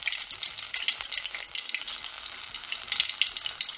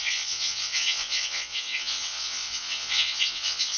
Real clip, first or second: first